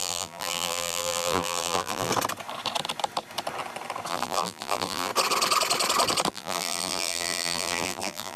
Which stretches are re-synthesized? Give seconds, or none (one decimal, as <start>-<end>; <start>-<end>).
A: 0.0-2.1; 4.1-5.1; 6.3-8.4

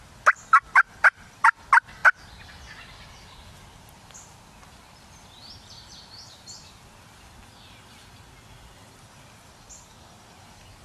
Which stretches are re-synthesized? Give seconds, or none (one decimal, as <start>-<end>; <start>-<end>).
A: 5.4-6.6

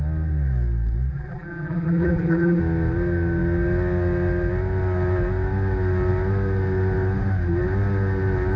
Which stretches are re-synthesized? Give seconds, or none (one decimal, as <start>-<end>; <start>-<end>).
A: 1.1-2.6

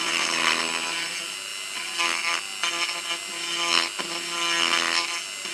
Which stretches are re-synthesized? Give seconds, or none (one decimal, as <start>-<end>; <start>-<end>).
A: 0.0-0.5

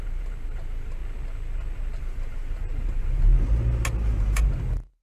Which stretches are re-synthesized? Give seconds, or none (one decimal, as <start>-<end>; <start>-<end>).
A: 0.0-1.0; 2.0-3.3; 4.1-5.0

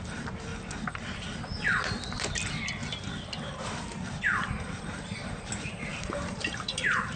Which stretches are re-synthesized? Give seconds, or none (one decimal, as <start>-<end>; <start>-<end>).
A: 0.0-0.5; 4.8-7.2

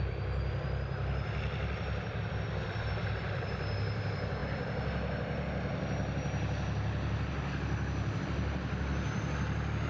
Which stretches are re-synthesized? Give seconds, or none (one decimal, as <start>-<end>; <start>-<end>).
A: 0.0-4.4; 8.2-9.9

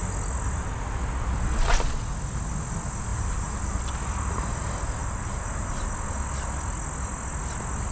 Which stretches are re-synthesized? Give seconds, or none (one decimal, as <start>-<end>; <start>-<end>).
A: 3.1-3.8; 5.0-5.7